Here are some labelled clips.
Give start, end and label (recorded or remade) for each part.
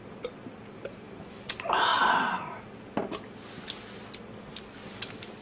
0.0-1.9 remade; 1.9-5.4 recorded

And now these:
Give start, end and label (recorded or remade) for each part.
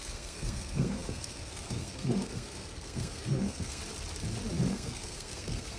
0.0-3.8 remade; 3.8-4.7 recorded; 4.7-5.8 remade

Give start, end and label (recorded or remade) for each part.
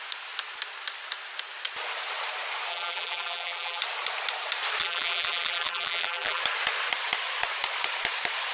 0.0-2.7 recorded; 2.7-3.8 remade; 3.8-4.8 recorded; 4.8-6.4 remade; 6.4-8.5 recorded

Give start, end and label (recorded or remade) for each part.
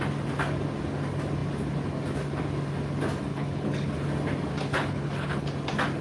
0.0-3.3 recorded; 3.3-3.9 remade; 3.9-4.7 recorded; 4.7-5.5 remade; 5.5-6.0 recorded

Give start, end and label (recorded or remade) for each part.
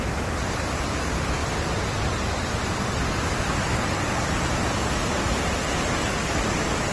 0.0-1.4 recorded; 1.4-2.8 remade; 2.8-6.9 recorded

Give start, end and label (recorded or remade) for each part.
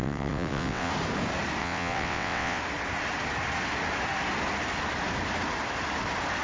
0.0-0.9 remade; 0.9-1.6 recorded; 1.6-2.6 remade; 2.6-6.4 recorded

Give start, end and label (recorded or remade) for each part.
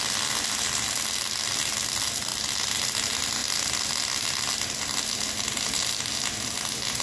0.0-7.0 recorded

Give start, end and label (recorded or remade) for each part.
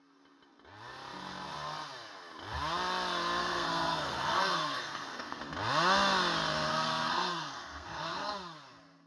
0.0-3.4 recorded; 3.4-5.4 remade; 5.4-6.7 recorded; 6.7-8.3 remade; 8.3-9.1 recorded